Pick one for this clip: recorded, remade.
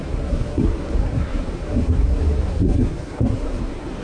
remade